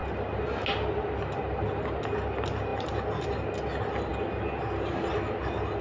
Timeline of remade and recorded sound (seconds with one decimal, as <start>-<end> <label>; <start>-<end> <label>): 0.0-5.8 recorded